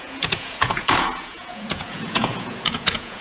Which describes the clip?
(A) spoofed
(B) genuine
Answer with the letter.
A